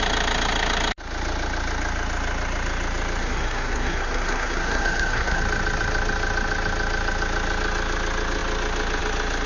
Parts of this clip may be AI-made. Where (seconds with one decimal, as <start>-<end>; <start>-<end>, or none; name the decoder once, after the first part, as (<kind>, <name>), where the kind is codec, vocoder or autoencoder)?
3.2-5.4 (codec, SNAC)